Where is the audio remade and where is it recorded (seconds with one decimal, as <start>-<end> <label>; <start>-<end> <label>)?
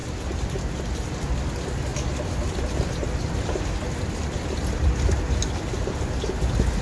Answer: 0.0-6.8 recorded